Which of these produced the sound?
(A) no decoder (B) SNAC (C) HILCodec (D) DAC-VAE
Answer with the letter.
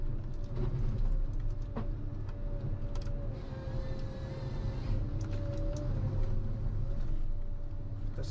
A